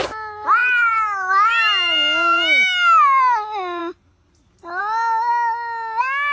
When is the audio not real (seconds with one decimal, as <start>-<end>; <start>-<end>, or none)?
0.6-1.5